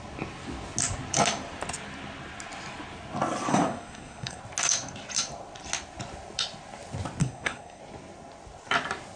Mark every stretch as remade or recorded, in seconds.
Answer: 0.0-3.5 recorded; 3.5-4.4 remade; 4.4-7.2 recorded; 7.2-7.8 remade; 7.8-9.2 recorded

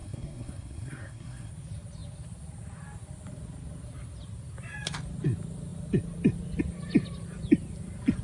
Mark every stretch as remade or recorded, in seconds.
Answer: 0.0-1.5 remade; 1.5-8.2 recorded

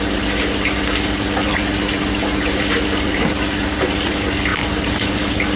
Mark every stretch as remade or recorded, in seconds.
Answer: 0.0-5.6 recorded

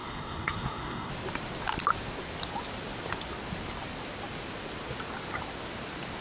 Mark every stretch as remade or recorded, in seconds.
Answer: 0.0-1.1 remade; 1.1-6.2 recorded

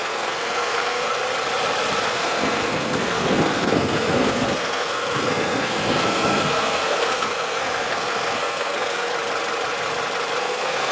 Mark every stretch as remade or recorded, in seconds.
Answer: 0.0-1.2 remade; 1.2-2.0 recorded; 2.0-9.1 remade; 9.1-10.4 recorded; 10.4-10.9 remade